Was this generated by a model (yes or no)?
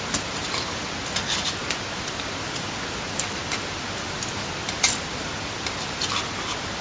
no